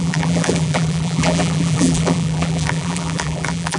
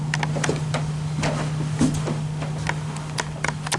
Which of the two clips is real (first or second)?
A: second